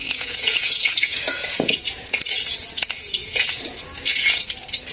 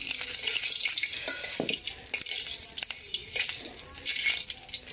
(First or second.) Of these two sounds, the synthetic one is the first